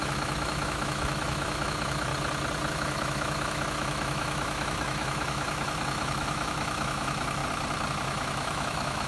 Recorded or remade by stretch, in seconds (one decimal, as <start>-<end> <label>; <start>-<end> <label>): 0.0-2.1 remade; 2.1-2.7 recorded; 2.7-7.4 remade; 7.4-7.9 recorded; 7.9-9.1 remade